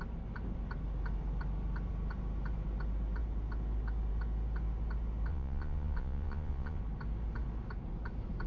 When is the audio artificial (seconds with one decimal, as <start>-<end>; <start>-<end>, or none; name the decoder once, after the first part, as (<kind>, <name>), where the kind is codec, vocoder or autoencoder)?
5.3-6.8 (vocoder, Vocos)